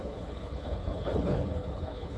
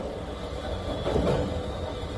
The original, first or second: second